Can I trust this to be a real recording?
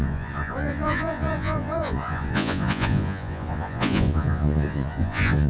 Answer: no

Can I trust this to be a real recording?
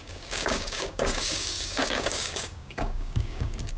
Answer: no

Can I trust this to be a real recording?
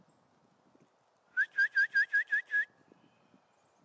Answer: yes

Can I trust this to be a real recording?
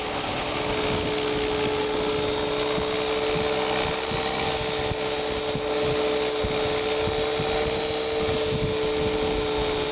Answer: yes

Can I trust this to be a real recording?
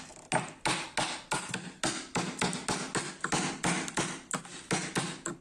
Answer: yes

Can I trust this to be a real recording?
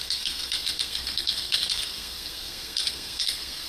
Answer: no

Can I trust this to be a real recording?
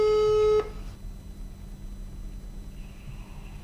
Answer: yes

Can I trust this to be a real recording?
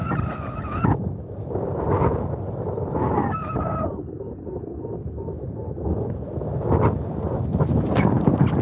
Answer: yes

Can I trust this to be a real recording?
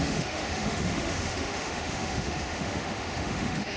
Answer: no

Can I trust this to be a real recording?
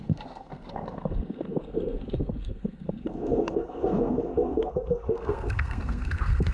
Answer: no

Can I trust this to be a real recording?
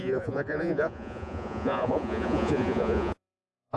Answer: no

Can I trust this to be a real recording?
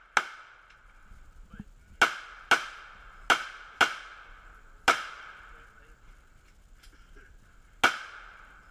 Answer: yes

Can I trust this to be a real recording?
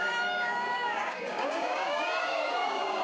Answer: no